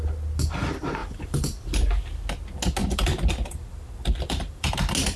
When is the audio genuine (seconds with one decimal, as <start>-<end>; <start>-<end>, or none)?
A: 0.0-1.0; 1.9-2.8; 4.7-5.2

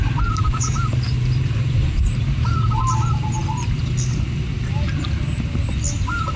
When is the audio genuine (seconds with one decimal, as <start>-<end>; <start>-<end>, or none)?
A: 2.5-6.4

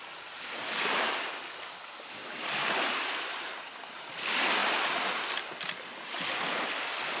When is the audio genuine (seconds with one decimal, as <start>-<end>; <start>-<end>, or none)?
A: 0.0-2.2; 4.0-7.2

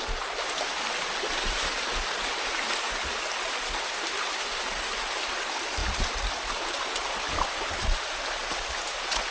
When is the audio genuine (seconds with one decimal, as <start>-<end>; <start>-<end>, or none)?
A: 0.0-9.3

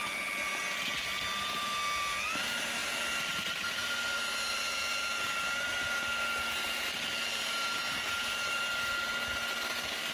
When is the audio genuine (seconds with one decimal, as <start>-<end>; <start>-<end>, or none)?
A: 0.0-10.1

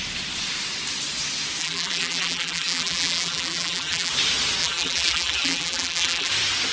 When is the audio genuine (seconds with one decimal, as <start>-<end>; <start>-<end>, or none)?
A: 0.0-1.6; 4.1-4.6; 6.3-6.7

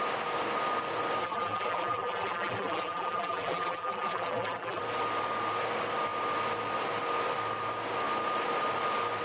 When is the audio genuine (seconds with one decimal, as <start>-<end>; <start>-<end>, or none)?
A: 0.0-1.2; 4.8-9.2